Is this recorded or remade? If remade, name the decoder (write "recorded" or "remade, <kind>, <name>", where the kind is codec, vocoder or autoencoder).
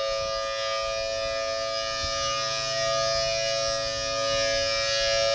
recorded